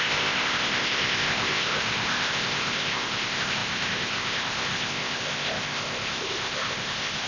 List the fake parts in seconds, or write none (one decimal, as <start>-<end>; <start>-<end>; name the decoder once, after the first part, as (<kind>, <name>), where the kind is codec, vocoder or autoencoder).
0.0-7.3 (codec, ZipCodec)